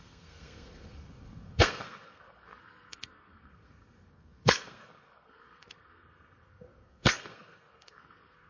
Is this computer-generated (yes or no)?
yes